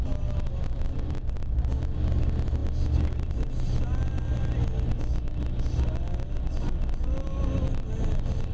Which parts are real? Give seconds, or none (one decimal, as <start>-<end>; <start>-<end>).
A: 0.0-8.5